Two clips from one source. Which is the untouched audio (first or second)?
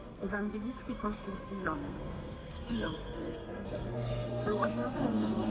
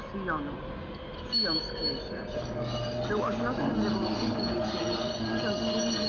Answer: second